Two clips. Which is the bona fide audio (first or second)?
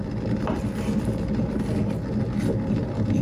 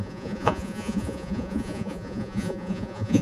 first